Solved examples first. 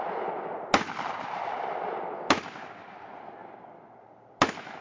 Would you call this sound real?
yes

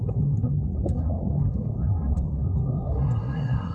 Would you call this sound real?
no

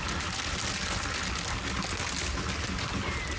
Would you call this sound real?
yes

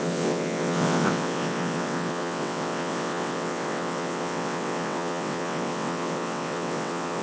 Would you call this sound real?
no